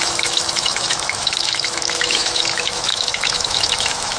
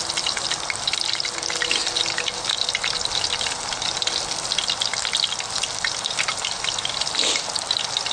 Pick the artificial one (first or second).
first